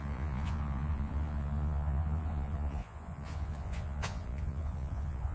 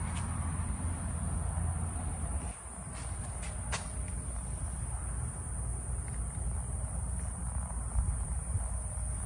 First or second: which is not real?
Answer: first